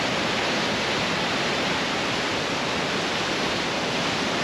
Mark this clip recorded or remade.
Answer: recorded